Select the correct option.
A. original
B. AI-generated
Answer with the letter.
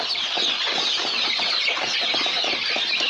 A